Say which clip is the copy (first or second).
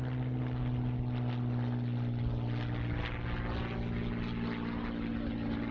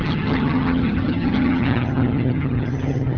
second